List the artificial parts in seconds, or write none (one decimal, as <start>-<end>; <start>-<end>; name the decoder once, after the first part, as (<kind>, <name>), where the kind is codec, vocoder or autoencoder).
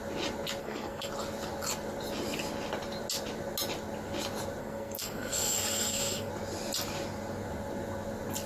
0.6-1.1 (codec, SNAC); 4.6-6.3